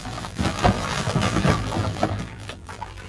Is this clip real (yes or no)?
no